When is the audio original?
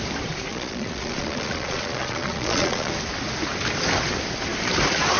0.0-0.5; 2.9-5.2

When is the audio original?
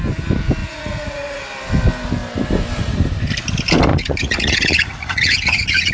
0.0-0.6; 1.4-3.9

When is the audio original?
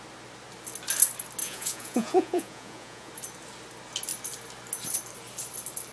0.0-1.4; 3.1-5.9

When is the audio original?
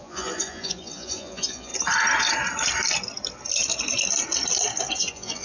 1.7-4.9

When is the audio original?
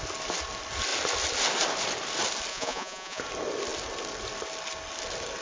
0.0-2.5; 3.2-5.4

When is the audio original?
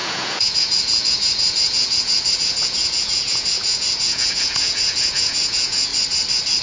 5.9-6.6